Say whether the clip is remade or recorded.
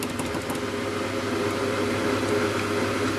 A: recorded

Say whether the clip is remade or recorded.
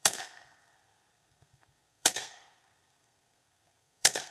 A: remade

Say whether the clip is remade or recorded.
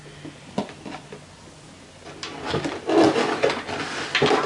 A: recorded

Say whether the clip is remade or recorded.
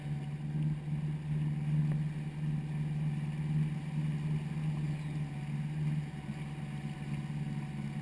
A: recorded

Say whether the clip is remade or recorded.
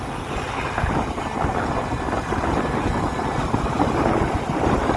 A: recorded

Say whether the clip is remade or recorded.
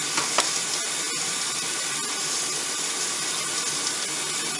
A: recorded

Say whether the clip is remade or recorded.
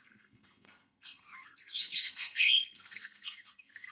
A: remade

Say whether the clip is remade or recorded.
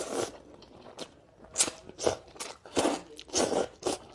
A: recorded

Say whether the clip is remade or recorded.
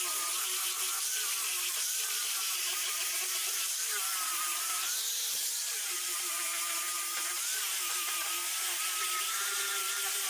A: remade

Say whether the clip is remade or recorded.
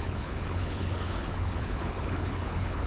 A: remade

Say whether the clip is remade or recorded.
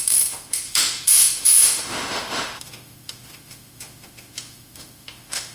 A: remade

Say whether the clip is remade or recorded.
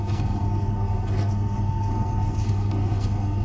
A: remade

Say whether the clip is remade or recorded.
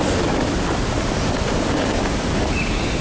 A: recorded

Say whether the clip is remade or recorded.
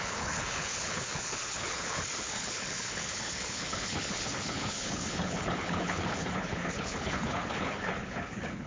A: remade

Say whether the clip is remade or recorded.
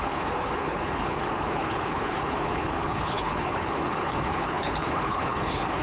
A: remade